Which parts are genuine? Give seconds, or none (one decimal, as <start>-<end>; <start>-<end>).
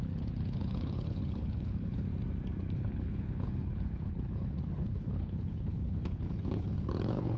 2.1-2.7